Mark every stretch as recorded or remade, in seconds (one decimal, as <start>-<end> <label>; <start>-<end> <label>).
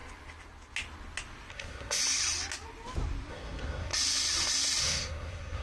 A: 0.0-1.5 recorded; 1.5-2.0 remade; 2.0-3.3 recorded; 3.3-3.9 remade; 3.9-4.8 recorded; 4.8-5.6 remade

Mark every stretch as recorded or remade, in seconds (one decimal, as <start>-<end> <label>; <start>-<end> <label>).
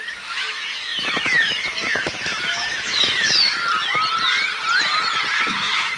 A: 0.0-3.6 remade; 3.6-5.4 recorded; 5.4-6.0 remade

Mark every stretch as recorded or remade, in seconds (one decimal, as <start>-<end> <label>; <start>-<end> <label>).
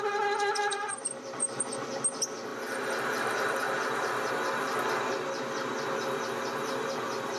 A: 0.0-0.5 recorded; 0.5-1.7 remade; 1.7-2.5 recorded; 2.5-4.3 remade; 4.3-7.4 recorded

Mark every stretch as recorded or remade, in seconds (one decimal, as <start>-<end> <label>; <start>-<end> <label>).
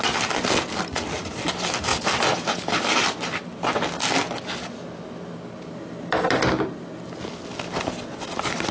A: 0.0-1.9 recorded; 1.9-3.3 remade; 3.3-8.7 recorded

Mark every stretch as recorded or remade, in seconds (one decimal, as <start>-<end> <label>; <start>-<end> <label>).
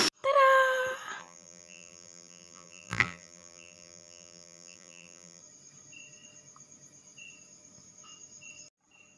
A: 0.0-1.2 recorded; 1.2-5.4 remade; 5.4-9.2 recorded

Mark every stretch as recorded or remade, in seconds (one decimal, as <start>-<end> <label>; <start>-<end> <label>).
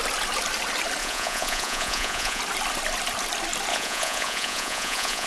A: 0.0-1.0 recorded; 1.0-2.4 remade; 2.4-3.7 recorded; 3.7-5.3 remade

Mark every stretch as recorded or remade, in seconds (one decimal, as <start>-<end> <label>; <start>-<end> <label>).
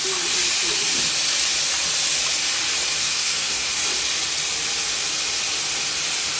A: 0.0-3.0 recorded; 3.0-3.7 remade; 3.7-6.4 recorded